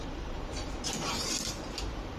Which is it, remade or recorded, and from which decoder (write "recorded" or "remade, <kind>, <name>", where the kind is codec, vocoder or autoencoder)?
remade, vocoder, BigVGAN v2